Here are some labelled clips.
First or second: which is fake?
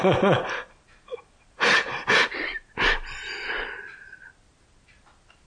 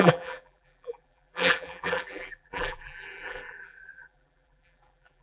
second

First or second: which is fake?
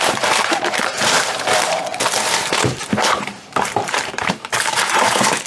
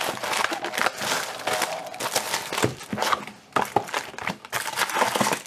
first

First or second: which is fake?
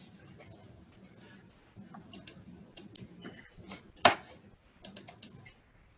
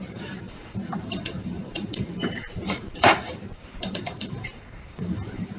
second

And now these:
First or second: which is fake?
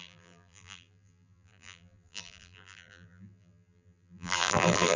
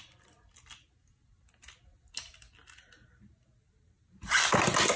first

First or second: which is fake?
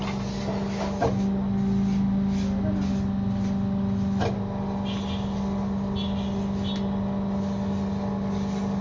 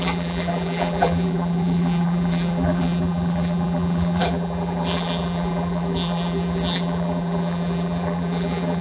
second